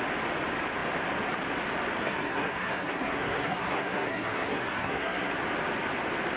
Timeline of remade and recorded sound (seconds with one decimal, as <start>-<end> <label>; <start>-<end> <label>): 0.0-2.0 recorded; 2.0-5.3 remade; 5.3-6.4 recorded